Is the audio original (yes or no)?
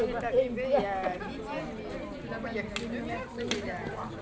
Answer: yes